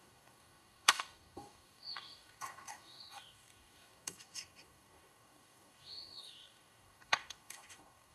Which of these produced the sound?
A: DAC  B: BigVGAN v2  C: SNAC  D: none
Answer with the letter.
A